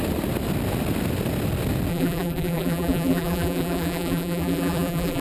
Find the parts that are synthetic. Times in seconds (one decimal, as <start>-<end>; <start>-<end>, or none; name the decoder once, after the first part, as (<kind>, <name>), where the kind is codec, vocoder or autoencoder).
1.9-5.2 (vocoder, BigVGAN v2)